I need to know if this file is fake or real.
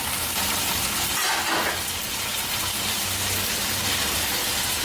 real